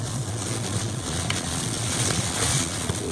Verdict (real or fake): fake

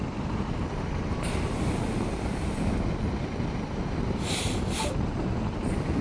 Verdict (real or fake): real